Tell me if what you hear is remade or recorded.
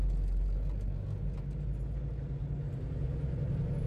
recorded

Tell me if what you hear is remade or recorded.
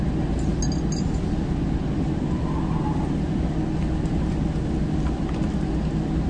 recorded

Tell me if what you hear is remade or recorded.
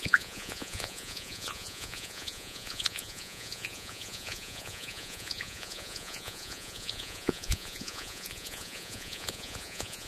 remade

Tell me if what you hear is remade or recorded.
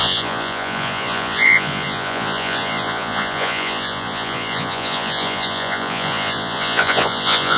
remade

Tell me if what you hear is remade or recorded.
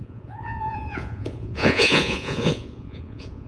remade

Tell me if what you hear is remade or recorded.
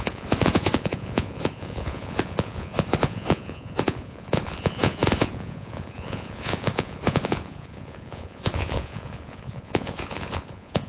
remade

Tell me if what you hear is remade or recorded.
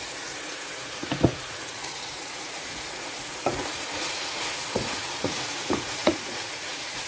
remade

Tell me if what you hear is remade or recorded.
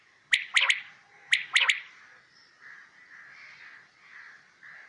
recorded